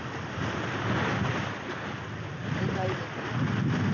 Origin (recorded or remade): recorded